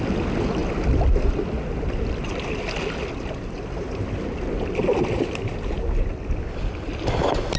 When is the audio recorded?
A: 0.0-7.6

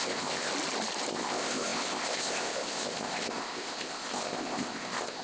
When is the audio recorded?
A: 0.5-1.1